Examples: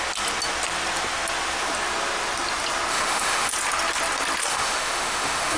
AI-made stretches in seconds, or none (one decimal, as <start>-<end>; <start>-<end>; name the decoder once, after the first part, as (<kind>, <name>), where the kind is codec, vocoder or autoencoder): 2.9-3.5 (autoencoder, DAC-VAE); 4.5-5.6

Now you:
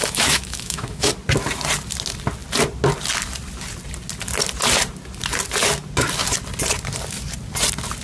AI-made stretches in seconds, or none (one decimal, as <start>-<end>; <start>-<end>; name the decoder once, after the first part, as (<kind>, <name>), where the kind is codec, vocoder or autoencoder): 0.0-1.1 (autoencoder, DAC-VAE)

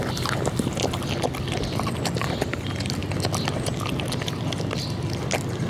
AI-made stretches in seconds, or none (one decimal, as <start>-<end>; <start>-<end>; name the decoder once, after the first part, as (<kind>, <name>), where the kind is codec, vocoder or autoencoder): none

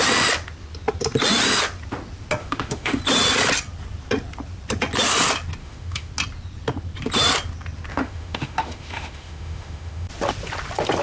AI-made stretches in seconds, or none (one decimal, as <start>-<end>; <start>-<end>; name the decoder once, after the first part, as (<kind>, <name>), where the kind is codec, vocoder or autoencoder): 2.4-3.0 (autoencoder, DAC-VAE); 5.6-6.1; 7.9-10.1

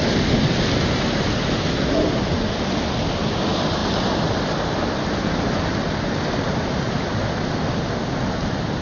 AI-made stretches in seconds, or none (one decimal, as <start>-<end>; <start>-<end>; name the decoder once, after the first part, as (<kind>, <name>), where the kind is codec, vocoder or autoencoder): none

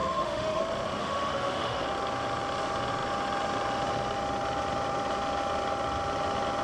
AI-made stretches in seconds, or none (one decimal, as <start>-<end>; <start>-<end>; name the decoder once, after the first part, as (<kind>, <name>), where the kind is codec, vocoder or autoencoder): 0.0-0.6 (autoencoder, DAC-VAE); 1.0-1.8